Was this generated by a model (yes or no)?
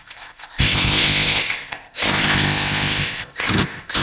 yes